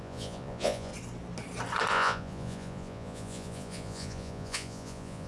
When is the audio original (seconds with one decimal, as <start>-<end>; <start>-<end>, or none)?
0.9-1.9